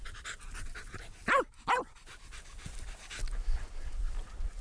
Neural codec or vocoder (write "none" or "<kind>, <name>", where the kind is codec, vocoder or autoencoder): none